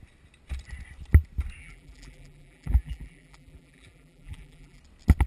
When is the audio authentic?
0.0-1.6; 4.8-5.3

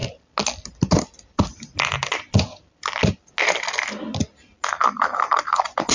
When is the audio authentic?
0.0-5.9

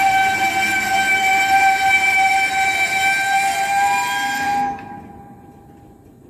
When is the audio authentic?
0.0-1.3; 5.1-6.3